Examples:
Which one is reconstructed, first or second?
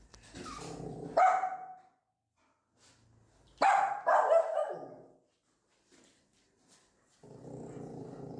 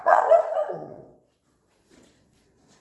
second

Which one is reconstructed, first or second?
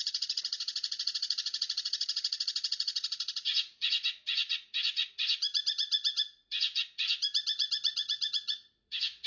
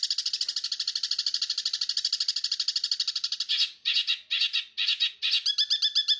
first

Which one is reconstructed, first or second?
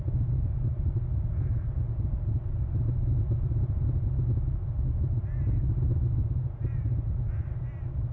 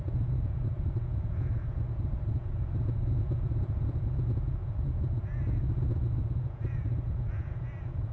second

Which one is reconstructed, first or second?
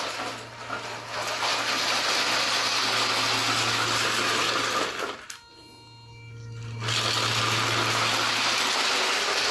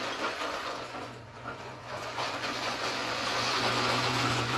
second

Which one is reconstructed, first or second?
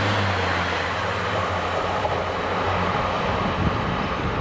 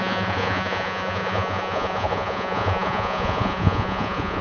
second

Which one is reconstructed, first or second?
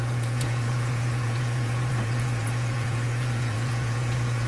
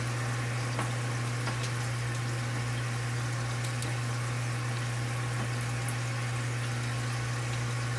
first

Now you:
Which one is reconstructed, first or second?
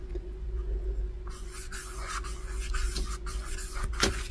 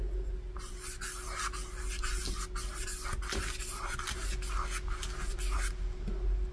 first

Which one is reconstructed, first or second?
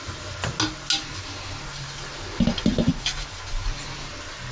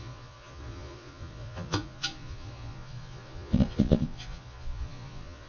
second